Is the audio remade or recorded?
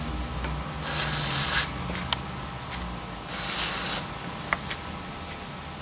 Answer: recorded